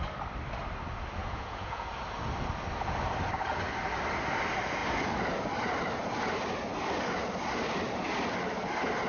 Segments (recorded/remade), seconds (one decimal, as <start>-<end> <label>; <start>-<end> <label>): 0.0-1.2 recorded; 1.2-1.9 remade; 1.9-9.1 recorded